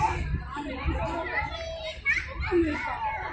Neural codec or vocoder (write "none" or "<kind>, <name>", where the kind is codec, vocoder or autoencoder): none